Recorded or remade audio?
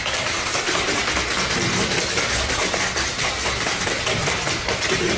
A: recorded